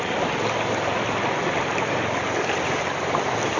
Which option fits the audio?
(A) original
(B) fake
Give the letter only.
A